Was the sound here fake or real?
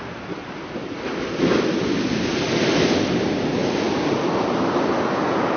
real